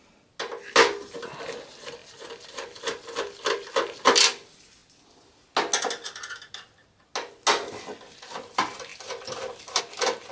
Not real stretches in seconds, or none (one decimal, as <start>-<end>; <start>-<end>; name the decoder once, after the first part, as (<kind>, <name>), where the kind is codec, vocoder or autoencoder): none